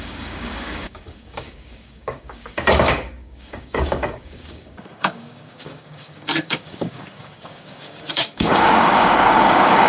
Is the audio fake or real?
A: fake